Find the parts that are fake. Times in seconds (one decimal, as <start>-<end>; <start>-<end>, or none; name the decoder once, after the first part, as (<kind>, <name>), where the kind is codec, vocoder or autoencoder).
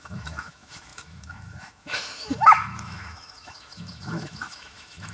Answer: 0.0-5.1 (autoencoder, DAC-VAE)